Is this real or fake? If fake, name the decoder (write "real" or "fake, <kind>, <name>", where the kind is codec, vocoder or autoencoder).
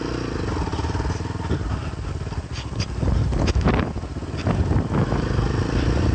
real